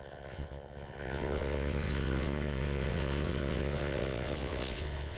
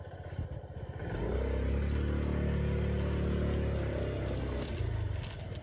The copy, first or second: first